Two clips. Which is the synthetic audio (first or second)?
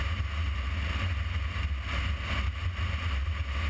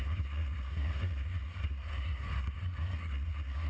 second